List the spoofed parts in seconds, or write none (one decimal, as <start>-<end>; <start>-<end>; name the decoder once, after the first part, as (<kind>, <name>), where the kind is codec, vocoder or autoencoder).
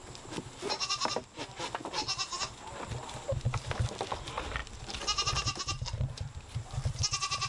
none